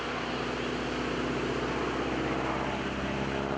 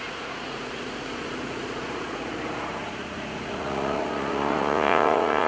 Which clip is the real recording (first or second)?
first